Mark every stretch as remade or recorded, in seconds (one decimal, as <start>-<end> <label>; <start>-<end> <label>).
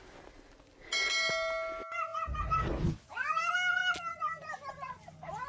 0.0-5.5 recorded